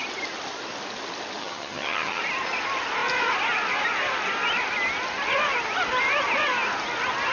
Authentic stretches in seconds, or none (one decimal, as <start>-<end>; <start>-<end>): 0.0-1.4; 2.2-7.3

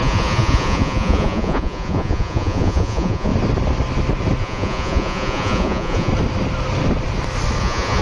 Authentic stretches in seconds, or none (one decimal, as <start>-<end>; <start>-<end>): 3.3-4.4; 6.1-7.6